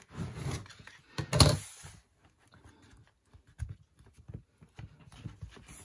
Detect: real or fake real